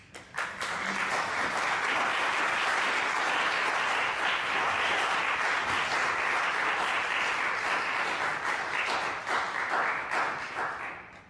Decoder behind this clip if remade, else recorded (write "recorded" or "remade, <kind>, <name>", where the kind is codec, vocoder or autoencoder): recorded